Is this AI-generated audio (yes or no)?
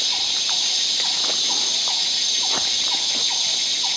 no